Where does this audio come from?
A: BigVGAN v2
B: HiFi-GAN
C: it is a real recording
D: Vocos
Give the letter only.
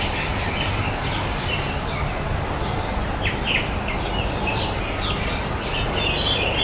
C